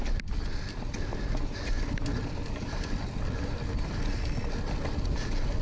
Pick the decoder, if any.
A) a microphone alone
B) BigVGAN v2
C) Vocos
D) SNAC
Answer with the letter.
A